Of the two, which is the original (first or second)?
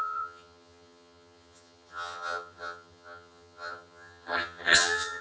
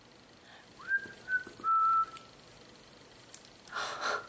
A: second